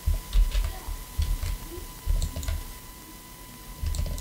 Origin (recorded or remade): recorded